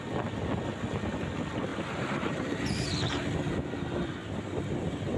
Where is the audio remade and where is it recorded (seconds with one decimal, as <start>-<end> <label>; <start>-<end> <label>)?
0.0-1.7 recorded; 1.7-2.9 remade; 2.9-5.2 recorded